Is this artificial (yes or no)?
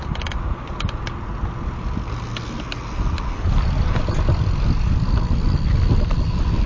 no